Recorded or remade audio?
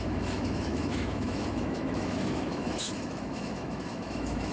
remade